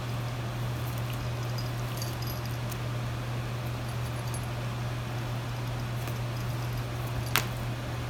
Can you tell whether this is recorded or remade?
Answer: recorded